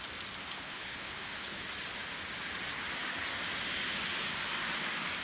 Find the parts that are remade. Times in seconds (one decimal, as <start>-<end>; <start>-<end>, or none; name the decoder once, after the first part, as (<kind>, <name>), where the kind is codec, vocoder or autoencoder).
0.4-1.6 (codec, HILCodec)